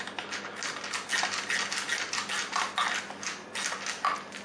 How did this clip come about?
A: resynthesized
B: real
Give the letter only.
B